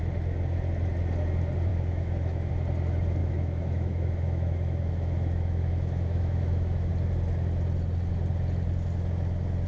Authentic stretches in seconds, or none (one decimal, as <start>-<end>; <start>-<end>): 0.0-1.7; 2.5-3.2; 6.9-9.7